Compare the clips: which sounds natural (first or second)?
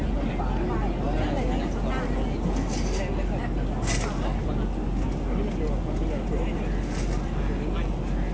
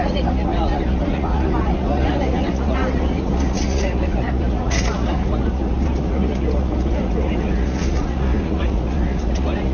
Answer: first